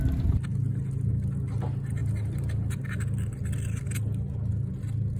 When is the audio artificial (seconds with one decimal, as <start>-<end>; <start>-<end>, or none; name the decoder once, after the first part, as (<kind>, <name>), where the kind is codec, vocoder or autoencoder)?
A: none